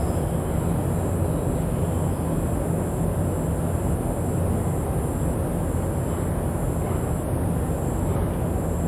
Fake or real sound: real